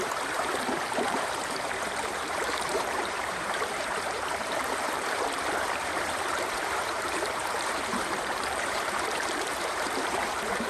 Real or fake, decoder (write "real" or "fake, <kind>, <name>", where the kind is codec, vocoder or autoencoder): fake, vocoder, BigVGAN v2